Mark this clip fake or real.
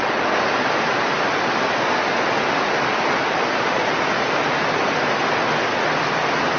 real